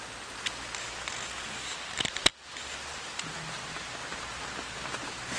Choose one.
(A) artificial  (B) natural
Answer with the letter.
B